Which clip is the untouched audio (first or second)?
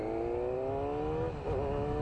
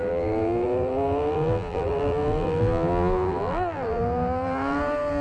first